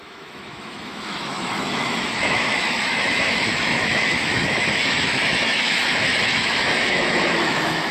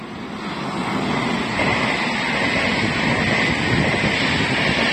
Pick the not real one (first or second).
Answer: first